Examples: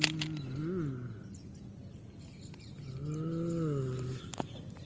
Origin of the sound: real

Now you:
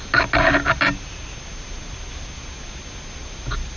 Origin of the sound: real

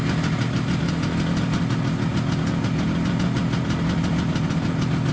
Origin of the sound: real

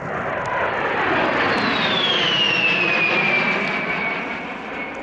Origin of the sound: real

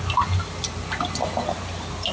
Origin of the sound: real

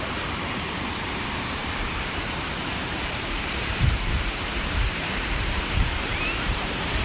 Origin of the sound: fake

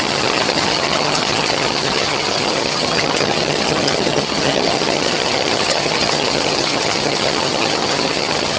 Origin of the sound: fake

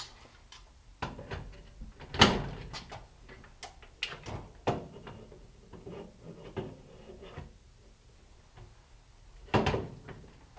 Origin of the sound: real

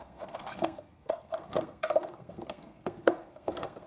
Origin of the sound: fake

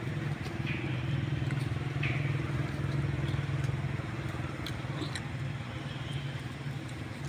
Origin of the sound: real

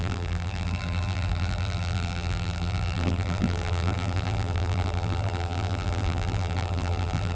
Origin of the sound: fake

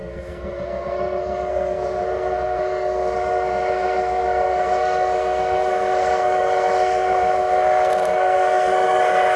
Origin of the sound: fake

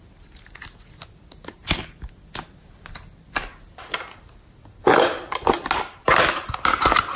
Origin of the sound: real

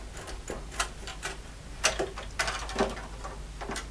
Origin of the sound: real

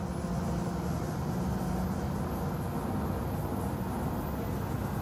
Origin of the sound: real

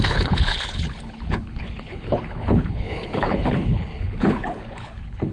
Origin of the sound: fake